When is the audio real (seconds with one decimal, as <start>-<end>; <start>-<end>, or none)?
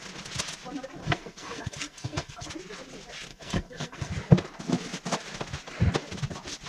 0.0-1.0; 2.5-3.3; 4.1-6.7